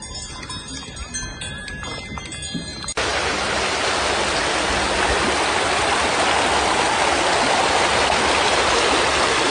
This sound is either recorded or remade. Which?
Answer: recorded